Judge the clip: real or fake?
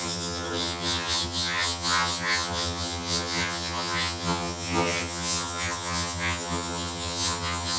fake